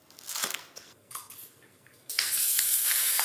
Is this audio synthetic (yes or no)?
yes